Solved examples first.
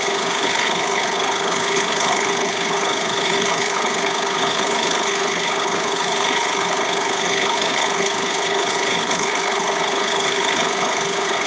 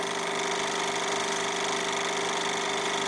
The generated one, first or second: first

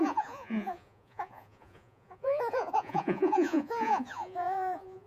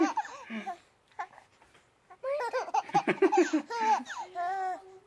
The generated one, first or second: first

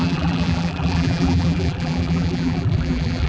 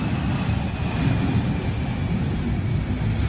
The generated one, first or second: first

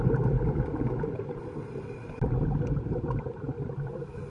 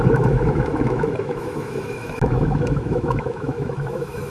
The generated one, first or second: second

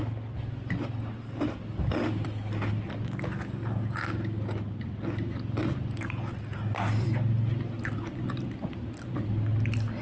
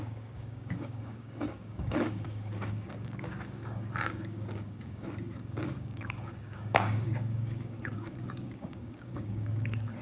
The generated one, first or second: second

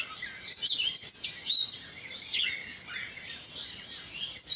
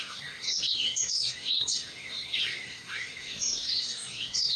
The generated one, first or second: second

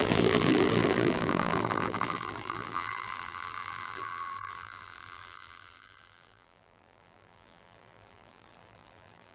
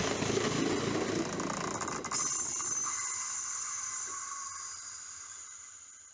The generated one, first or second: first